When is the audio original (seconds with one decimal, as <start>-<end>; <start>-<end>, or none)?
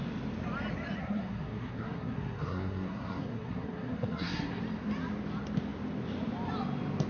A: 0.0-1.0; 4.6-7.1